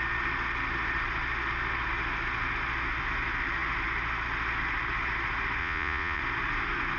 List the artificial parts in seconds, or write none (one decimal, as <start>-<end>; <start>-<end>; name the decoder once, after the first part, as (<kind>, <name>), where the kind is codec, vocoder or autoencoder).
5.6-6.2 (vocoder, Vocos)